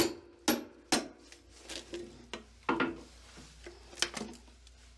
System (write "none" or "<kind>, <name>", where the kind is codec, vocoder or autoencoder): none